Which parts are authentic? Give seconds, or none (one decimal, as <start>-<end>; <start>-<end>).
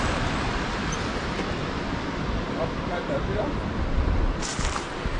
0.0-5.2